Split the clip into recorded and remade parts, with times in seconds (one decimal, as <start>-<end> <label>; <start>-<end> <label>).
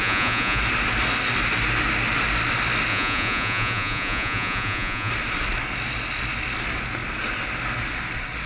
0.0-0.6 remade; 0.6-2.9 recorded; 2.9-5.1 remade; 5.1-8.5 recorded